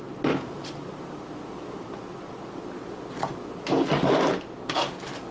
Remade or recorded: recorded